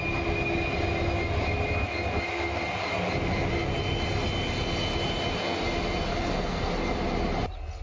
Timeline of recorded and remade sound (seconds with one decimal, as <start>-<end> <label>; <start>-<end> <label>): 0.0-6.1 recorded; 6.1-6.7 remade; 6.7-7.8 recorded